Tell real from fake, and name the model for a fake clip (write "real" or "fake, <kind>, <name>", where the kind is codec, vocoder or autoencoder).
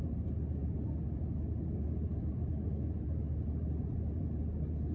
real